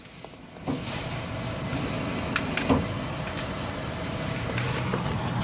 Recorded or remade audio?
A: recorded